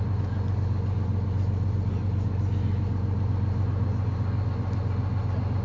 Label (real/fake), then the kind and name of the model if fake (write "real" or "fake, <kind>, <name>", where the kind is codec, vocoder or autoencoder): real